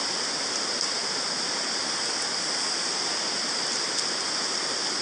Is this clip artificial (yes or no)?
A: no